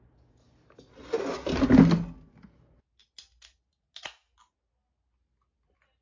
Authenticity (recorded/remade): recorded